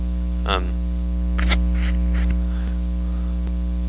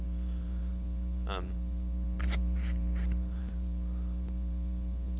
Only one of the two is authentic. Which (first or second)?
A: first